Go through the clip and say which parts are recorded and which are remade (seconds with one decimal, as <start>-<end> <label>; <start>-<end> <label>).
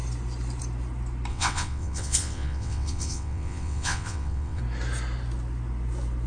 0.0-1.3 recorded; 1.3-4.6 remade; 4.6-6.3 recorded